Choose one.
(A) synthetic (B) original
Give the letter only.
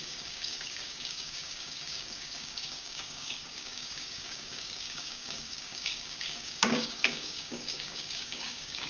A